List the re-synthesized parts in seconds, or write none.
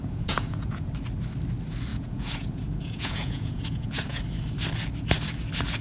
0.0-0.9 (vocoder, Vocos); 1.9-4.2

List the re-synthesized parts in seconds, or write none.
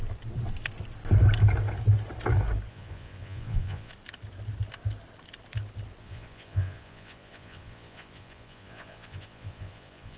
2.7-3.9 (vocoder, Vocos); 6.0-10.2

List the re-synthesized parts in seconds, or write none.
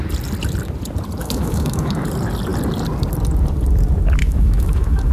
1.2-1.9 (autoencoder, DAC-VAE); 4.2-5.1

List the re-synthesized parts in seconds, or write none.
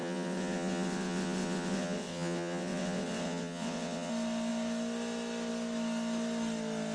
0.0-4.1 (vocoder, WaveNeXt)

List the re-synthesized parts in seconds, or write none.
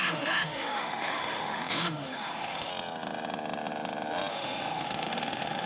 0.0-2.7 (autoencoder, DAC-VAE); 4.3-5.7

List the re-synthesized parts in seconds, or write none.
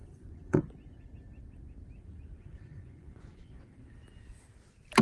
0.0-0.6 (vocoder, Vocos); 2.4-3.6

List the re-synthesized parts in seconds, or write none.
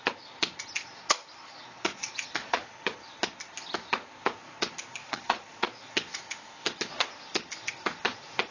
1.4-2.6 (vocoder, Vocos); 5.0-5.9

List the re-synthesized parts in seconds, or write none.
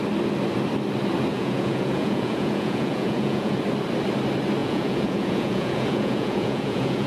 1.3-3.6 (vocoder, Vocos); 4.6-7.1